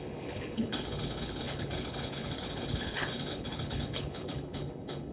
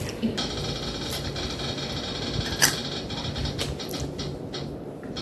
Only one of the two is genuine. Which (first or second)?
second